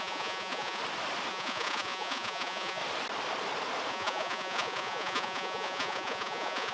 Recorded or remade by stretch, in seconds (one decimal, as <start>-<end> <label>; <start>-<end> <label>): 0.0-0.8 remade; 0.8-1.3 recorded; 1.3-2.8 remade; 2.8-3.9 recorded; 3.9-6.7 remade